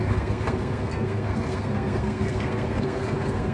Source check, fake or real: fake